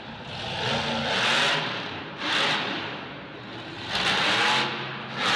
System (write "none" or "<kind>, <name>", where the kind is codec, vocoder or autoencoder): none